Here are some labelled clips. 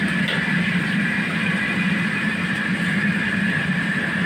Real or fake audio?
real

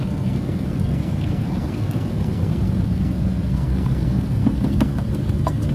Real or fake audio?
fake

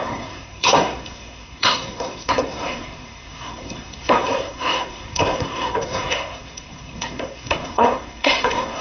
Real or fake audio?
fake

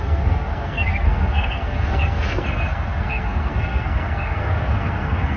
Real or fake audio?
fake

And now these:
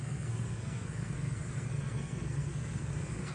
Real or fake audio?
fake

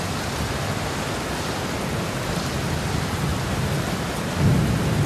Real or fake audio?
real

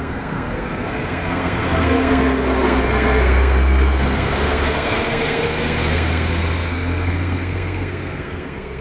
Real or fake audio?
fake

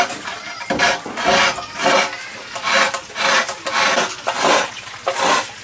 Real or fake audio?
real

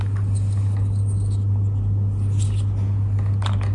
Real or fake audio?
real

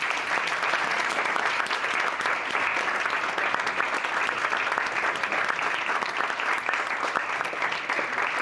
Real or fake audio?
real